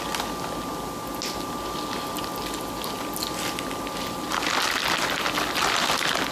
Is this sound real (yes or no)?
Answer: yes